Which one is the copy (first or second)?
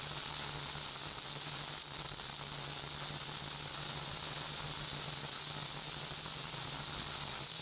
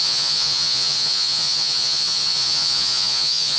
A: second